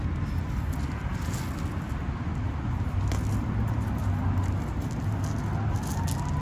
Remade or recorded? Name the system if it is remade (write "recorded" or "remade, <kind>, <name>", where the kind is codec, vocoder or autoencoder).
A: recorded